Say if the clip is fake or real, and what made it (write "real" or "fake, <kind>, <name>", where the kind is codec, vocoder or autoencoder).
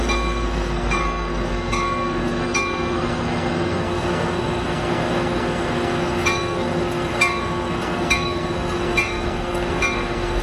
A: fake, codec, SNAC